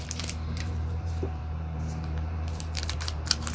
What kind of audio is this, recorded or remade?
remade